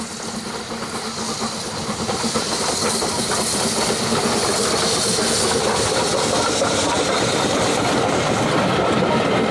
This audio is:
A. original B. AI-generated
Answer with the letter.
A